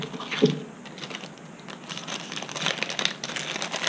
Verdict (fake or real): real